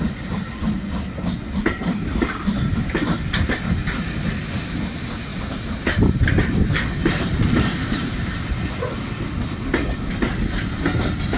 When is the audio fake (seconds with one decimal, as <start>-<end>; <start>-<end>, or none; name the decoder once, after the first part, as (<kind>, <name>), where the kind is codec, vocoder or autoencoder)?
5.3-8.5 (vocoder, BigVGAN v2)